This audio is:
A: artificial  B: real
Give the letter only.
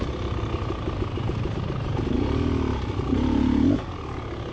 B